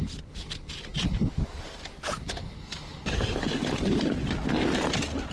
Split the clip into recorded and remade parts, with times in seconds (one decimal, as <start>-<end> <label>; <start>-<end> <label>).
0.0-5.3 recorded